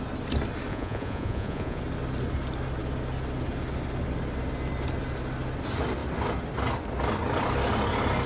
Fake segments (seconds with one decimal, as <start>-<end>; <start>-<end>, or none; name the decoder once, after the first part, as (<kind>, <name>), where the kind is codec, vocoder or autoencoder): 0.7-1.8 (vocoder, Vocos)